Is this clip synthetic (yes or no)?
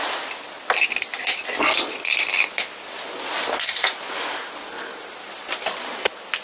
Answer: no